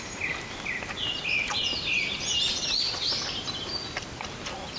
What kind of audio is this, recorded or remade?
recorded